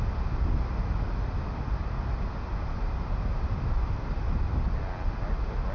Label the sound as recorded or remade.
recorded